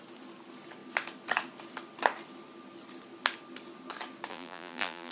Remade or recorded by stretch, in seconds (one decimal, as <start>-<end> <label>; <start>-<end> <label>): 0.0-4.3 recorded; 4.3-5.1 remade